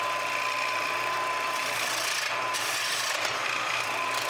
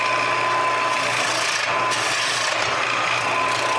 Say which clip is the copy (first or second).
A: first